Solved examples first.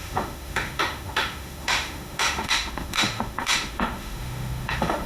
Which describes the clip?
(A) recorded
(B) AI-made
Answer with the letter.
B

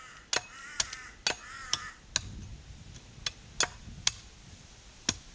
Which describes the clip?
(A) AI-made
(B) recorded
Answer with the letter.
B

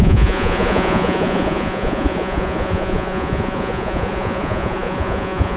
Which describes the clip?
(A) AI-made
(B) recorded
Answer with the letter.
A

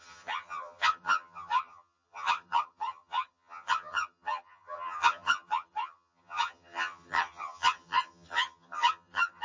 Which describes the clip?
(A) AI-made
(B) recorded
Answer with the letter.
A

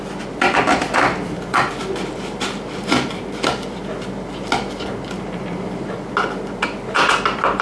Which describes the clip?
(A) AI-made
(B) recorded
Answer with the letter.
B